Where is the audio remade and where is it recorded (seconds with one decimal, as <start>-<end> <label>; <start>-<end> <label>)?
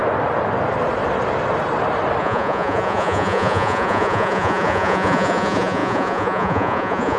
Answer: 0.0-2.2 recorded; 2.2-7.2 remade